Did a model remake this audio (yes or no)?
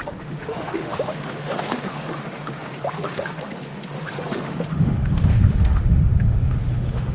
yes